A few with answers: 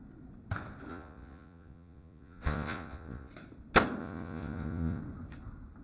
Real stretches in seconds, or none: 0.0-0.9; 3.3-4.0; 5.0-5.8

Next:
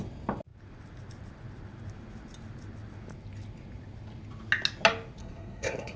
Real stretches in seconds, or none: 0.0-5.2

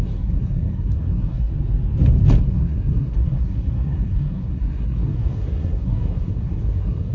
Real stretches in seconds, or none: 1.5-2.4

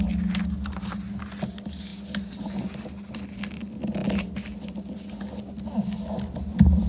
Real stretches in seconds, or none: 0.0-6.9